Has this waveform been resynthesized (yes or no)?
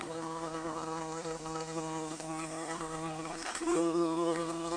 yes